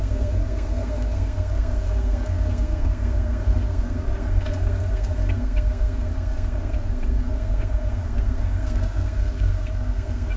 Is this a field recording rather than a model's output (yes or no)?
no